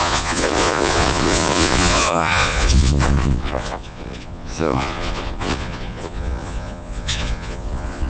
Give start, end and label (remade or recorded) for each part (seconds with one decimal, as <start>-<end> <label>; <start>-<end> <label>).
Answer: 0.0-8.1 remade